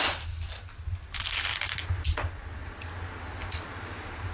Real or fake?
real